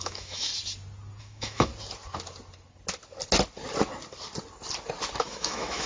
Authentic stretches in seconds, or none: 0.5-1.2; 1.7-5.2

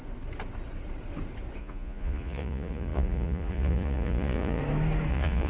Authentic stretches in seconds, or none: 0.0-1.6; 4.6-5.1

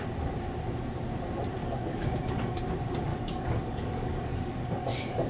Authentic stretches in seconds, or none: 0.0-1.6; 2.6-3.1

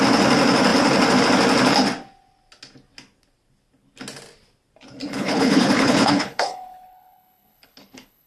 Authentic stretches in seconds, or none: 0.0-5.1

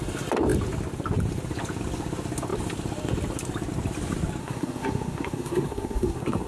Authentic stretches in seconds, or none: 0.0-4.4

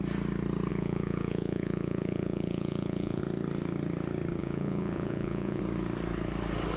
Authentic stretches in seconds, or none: 0.0-0.7; 3.2-4.4; 5.6-6.8